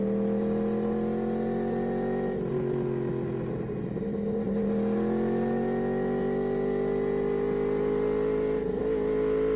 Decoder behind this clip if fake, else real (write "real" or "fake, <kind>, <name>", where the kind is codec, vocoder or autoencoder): real